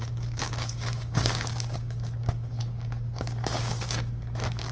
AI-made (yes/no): yes